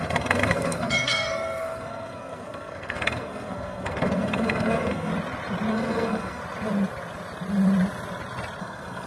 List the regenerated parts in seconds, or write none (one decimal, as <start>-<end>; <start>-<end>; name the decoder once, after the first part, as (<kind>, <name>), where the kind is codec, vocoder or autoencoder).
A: 0.0-5.1 (codec, SNAC); 5.7-6.4; 8.6-9.1